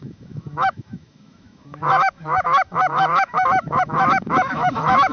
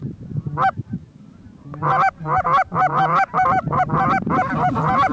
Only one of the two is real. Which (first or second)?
second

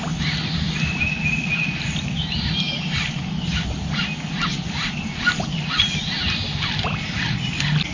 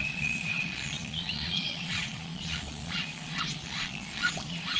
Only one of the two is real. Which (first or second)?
first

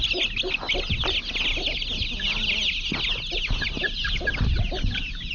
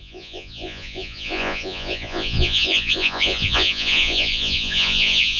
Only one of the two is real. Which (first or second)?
first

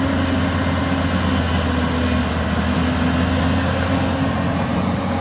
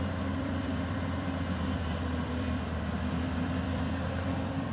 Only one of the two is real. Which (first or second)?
first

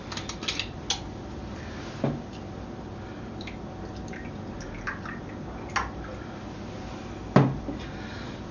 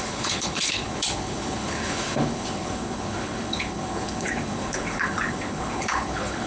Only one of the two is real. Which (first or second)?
first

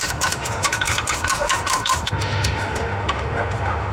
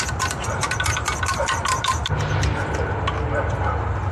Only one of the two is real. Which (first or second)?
second